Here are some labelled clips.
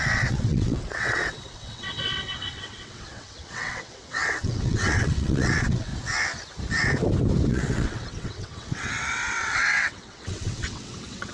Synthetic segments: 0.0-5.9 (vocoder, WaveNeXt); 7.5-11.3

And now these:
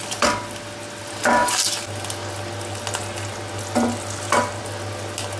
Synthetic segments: none

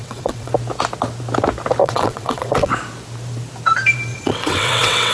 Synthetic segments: 0.0-0.5 (vocoder, WaveNeXt); 1.8-2.7; 4.1-5.1

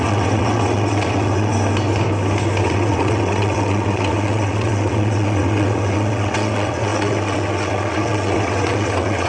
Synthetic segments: 0.0-1.5 (vocoder, WaveNeXt); 2.6-9.3

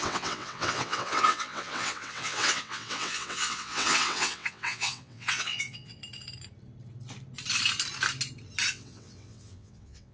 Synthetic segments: 0.0-6.0 (vocoder, WaveNeXt); 8.7-10.1

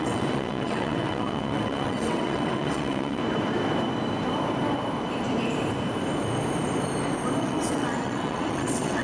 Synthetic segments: 0.0-3.2 (vocoder, WaveNeXt); 7.4-9.0

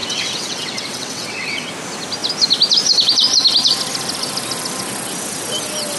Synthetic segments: 0.0-1.7 (vocoder, WaveNeXt)